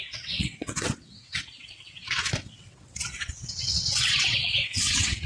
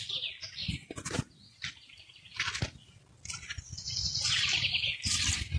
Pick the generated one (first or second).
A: first